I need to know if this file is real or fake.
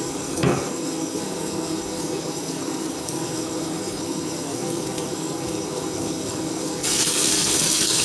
fake